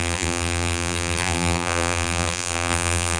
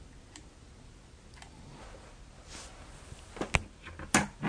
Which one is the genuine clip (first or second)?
second